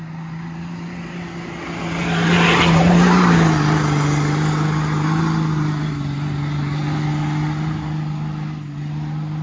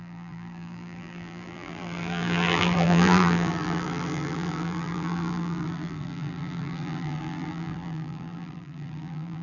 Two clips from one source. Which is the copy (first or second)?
second